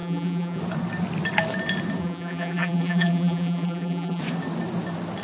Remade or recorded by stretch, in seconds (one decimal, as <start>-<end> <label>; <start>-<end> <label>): 0.0-0.6 remade; 0.6-2.0 recorded; 2.0-4.2 remade; 4.2-5.2 recorded